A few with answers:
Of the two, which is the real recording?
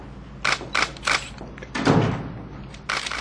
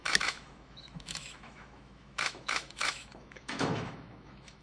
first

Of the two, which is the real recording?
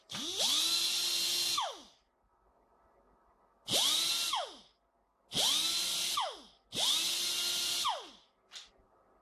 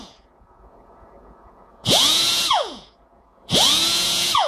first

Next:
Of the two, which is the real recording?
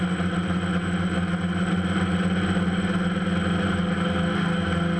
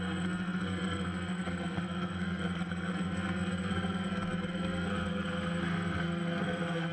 first